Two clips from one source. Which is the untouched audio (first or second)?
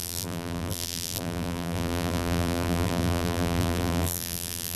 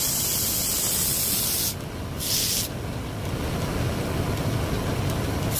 second